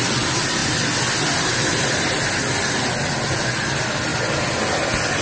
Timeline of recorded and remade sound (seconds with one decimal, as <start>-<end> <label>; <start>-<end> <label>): 0.0-5.2 recorded